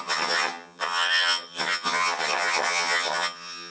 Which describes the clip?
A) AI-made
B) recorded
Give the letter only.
A